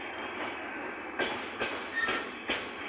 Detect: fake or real real